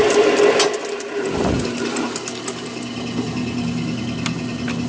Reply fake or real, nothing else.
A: real